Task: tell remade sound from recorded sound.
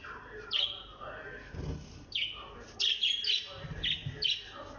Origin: recorded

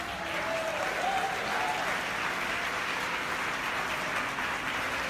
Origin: recorded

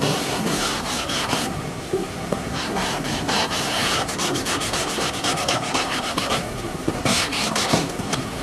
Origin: remade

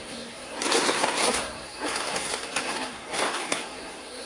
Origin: remade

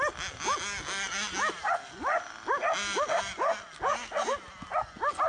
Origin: recorded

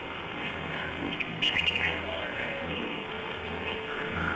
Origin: remade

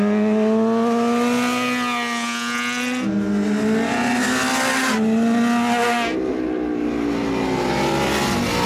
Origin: recorded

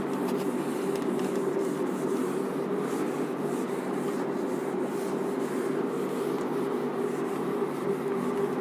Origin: recorded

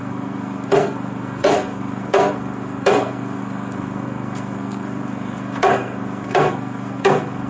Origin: remade